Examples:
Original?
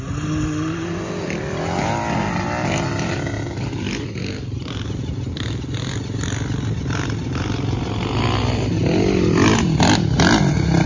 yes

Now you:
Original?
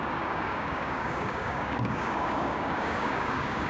no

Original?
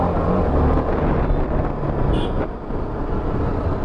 yes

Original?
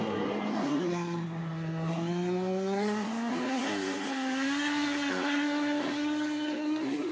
no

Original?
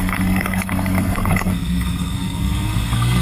no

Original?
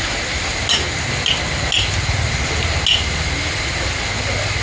yes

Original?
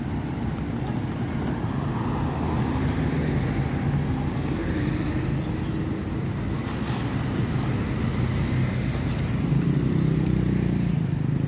yes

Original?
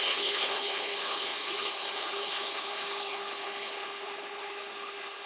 no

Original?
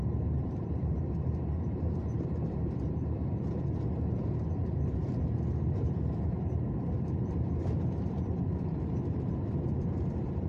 no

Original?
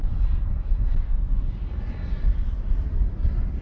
yes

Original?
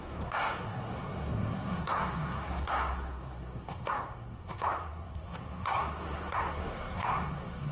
no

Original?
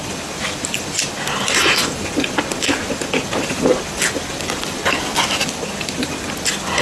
yes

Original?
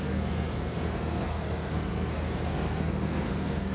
no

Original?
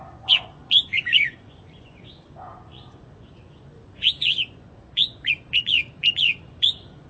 no